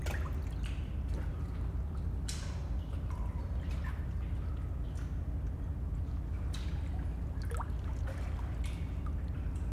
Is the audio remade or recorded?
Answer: recorded